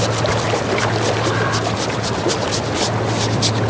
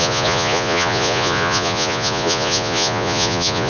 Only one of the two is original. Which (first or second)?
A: first